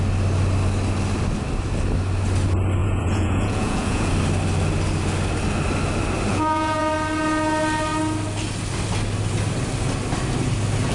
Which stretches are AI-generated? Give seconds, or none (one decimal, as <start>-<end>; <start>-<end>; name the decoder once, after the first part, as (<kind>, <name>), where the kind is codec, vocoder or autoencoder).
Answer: 2.8-4.1 (vocoder, Vocos); 6.3-6.9